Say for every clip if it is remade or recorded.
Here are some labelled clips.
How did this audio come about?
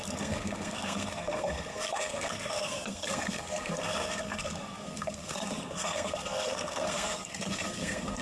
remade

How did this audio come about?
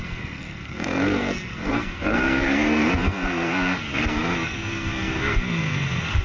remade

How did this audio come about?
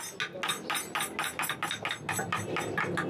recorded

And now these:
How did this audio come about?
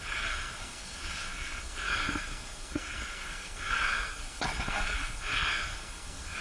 remade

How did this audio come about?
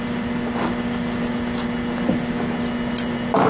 recorded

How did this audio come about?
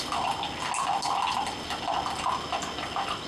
recorded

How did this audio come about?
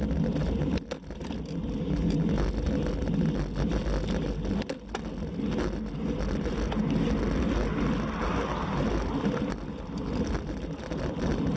recorded